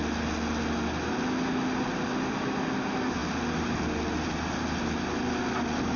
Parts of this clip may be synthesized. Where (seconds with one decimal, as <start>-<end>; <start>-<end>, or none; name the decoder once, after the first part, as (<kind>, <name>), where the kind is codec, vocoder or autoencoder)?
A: none